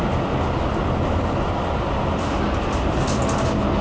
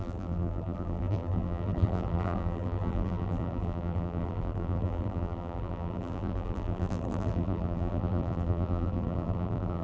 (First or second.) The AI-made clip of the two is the second